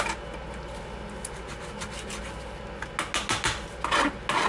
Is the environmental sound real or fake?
real